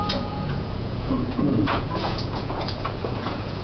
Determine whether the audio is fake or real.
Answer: fake